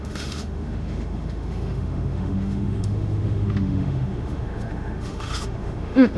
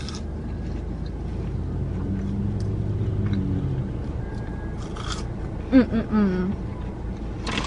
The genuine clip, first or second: second